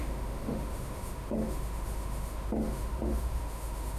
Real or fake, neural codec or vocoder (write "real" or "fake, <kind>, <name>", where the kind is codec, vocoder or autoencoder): fake, autoencoder, DAC-VAE